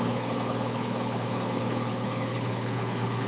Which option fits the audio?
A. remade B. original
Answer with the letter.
A